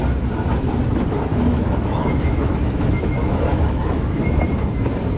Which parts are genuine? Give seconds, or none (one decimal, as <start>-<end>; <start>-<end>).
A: 0.0-1.3; 4.4-5.2